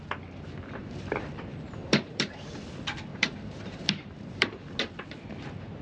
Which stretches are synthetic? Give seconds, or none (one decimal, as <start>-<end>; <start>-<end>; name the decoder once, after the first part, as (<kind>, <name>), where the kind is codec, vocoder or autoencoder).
0.8-2.6 (vocoder, BigVGAN v2); 3.1-4.8